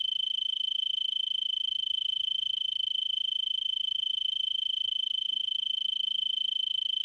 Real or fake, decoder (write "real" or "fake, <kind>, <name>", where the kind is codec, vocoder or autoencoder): fake, vocoder, BigVGAN v2